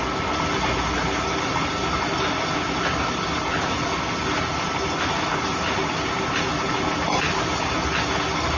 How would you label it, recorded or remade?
recorded